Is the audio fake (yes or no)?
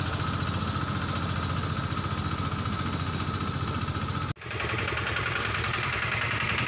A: no